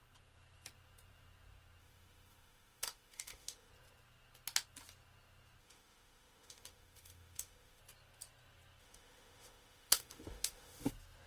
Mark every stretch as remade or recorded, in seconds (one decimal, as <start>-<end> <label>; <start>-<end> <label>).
0.0-1.8 recorded; 1.8-3.7 remade; 3.7-5.6 recorded; 5.6-7.8 remade; 7.8-8.8 recorded; 8.8-10.9 remade; 10.9-11.3 recorded